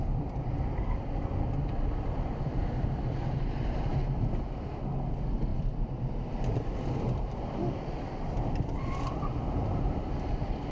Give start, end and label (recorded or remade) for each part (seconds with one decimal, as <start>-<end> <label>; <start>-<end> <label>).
0.0-3.9 remade; 3.9-5.1 recorded; 5.1-10.7 remade